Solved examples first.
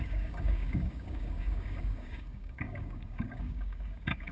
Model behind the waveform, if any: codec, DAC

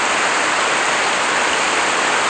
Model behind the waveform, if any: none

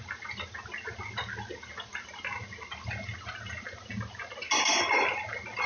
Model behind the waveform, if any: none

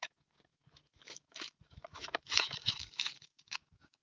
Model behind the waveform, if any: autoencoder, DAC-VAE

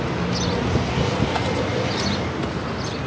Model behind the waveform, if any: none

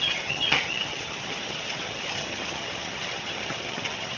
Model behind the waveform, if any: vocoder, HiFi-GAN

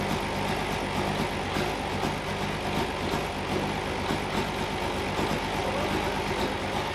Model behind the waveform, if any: none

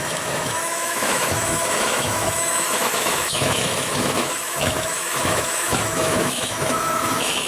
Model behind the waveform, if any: autoencoder, DAC-VAE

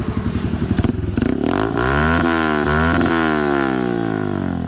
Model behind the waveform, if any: none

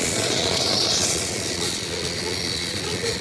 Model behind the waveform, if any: vocoder, Vocos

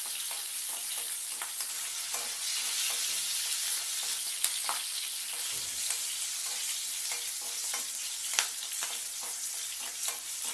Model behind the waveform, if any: none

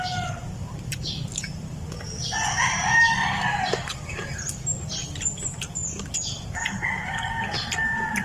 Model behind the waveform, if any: none